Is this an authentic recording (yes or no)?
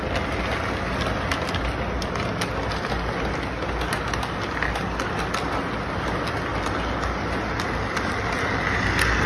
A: yes